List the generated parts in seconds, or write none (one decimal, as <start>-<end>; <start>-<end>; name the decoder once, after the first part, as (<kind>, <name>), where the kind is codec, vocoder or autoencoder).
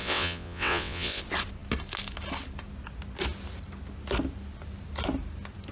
0.0-1.2 (vocoder, WaveNeXt)